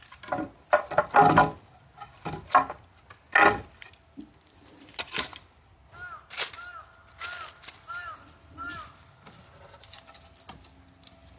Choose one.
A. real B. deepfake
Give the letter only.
A